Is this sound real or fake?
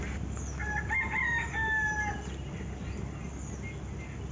real